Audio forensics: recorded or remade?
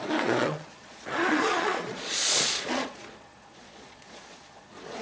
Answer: remade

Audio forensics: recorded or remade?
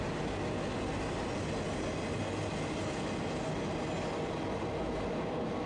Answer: recorded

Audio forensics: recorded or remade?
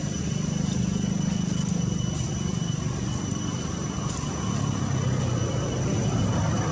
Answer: recorded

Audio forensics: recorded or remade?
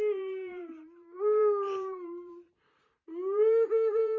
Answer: remade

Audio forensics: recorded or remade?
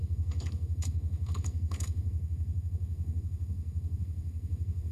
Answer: remade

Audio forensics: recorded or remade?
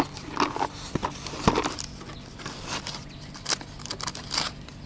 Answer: recorded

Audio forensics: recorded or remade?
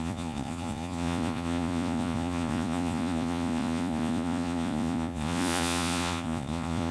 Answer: remade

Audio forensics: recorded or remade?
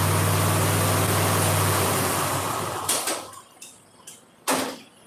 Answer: recorded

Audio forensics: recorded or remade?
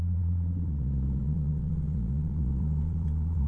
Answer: remade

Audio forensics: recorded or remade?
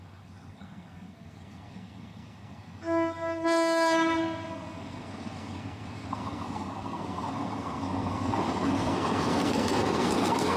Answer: remade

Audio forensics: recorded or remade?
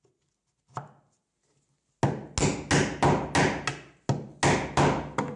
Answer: recorded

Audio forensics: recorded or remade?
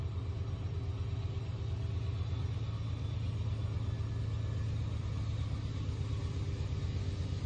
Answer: recorded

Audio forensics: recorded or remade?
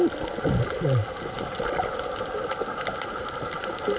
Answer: recorded